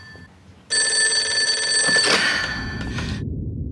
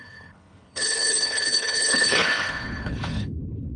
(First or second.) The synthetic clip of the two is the second